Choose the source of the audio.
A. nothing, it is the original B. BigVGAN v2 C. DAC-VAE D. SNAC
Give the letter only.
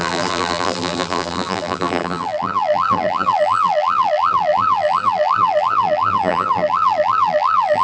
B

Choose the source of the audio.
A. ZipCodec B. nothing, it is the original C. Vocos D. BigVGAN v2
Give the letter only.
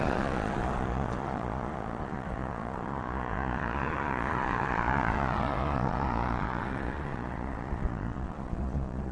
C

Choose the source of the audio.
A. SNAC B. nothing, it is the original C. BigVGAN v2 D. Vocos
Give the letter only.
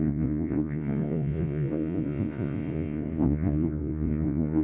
D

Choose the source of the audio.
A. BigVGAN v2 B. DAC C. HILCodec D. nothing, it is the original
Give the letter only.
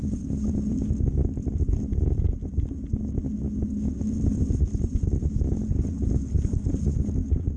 D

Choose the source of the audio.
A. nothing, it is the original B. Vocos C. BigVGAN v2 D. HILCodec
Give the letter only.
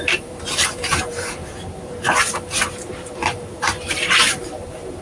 C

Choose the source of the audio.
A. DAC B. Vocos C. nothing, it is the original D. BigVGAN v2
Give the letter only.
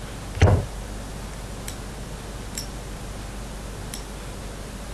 C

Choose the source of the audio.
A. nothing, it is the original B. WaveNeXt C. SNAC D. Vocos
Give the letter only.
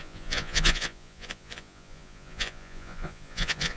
D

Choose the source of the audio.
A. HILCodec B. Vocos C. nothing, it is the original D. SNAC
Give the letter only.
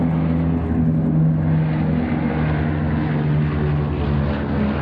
C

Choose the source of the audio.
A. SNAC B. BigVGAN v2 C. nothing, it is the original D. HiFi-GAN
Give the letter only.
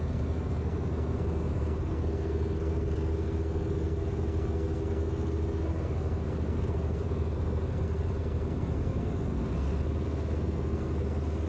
A